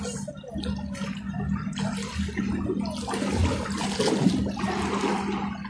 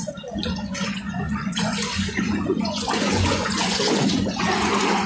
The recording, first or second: first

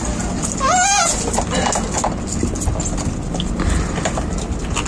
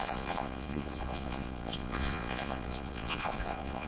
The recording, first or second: first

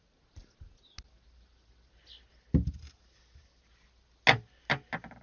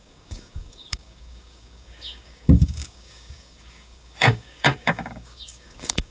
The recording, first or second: first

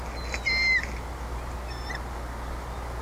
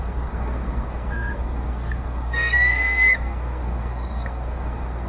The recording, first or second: first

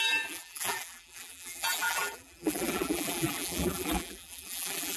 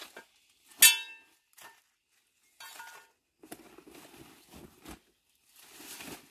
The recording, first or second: second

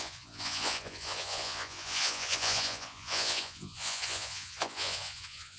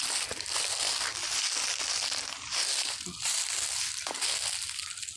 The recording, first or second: second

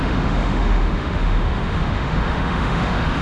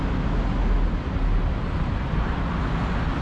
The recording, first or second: second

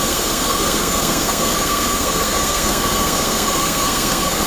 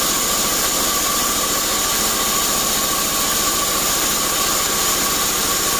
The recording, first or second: second